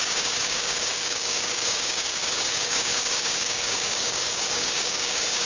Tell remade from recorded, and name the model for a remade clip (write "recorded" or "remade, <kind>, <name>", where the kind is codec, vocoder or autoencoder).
remade, codec, DAC